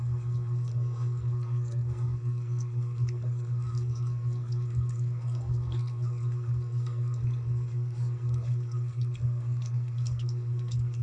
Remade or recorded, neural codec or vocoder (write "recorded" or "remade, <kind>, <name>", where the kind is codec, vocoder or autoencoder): remade, codec, SNAC